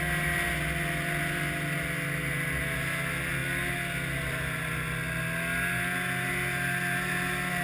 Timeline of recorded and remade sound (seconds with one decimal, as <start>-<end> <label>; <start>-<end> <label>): 0.0-7.6 recorded